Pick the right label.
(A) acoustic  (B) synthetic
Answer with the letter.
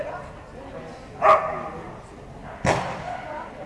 A